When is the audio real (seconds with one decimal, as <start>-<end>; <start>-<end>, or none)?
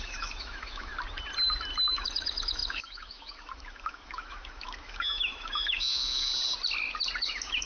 0.9-1.9; 6.3-7.2